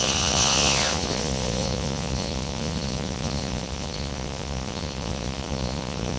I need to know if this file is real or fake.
fake